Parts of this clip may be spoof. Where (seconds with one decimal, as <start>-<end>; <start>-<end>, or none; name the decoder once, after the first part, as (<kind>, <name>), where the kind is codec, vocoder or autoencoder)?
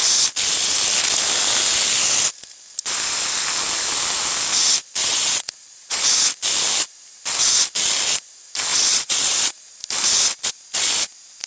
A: 5.0-6.0 (vocoder, WaveNeXt); 8.7-9.4